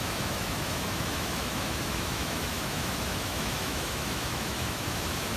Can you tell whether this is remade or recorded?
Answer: remade